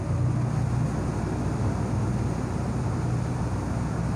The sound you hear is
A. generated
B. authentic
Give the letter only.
B